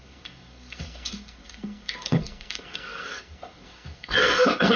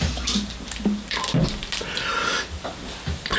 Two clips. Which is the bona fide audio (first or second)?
second